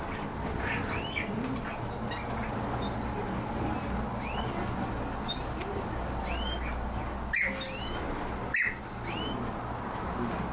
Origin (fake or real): real